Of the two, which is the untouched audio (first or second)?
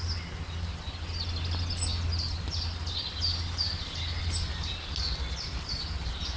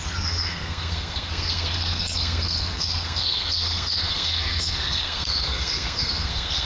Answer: first